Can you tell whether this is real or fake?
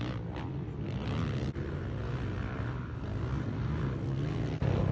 real